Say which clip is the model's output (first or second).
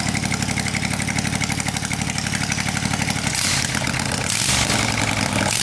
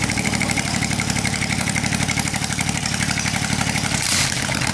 second